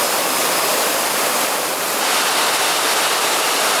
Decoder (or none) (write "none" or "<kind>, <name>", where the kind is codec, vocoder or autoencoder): none